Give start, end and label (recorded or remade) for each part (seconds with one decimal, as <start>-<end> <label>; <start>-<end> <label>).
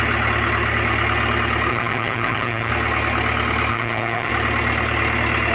0.0-1.7 recorded; 1.7-2.7 remade; 2.7-3.7 recorded; 3.7-4.3 remade; 4.3-5.5 recorded